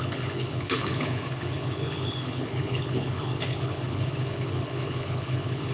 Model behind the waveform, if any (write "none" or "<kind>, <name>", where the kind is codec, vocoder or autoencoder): codec, HILCodec